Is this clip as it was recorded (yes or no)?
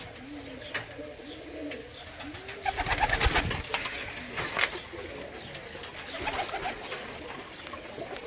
yes